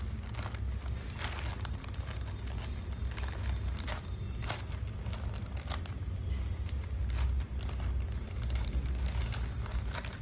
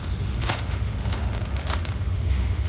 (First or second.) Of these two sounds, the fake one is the second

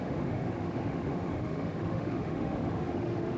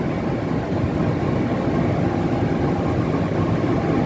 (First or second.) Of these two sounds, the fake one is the first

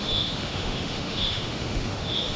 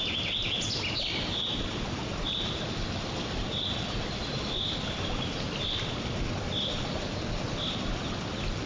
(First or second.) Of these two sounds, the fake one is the first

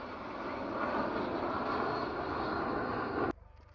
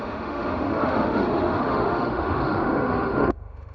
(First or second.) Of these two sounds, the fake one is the second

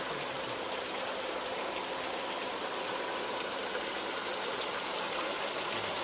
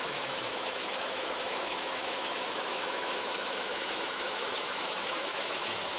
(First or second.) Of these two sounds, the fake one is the second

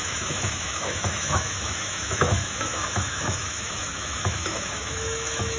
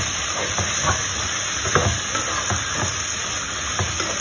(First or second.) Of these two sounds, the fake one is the first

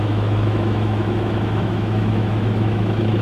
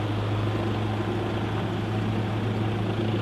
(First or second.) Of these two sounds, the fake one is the first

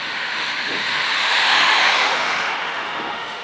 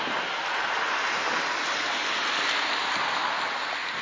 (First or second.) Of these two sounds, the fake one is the first